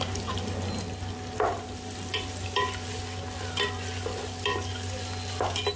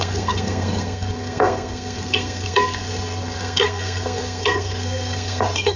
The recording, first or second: first